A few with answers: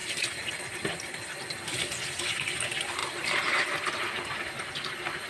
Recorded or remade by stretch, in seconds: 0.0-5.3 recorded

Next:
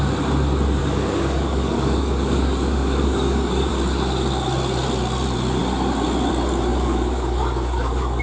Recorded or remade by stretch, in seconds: 0.0-0.8 recorded; 0.8-3.7 remade; 3.7-6.7 recorded; 6.7-8.2 remade

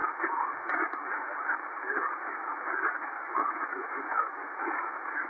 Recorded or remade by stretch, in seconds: 0.0-3.2 recorded; 3.2-4.4 remade; 4.4-5.3 recorded

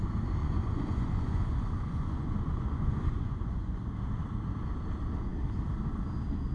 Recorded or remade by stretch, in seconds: 0.0-0.4 recorded; 0.4-3.8 remade; 3.8-6.5 recorded